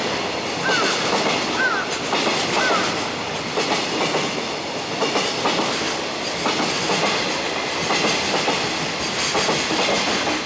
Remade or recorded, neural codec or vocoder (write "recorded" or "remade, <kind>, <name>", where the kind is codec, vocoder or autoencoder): recorded